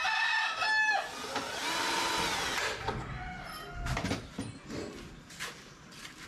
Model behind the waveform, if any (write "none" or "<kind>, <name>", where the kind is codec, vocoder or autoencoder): none